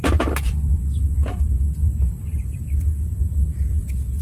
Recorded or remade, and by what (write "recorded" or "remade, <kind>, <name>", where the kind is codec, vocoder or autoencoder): recorded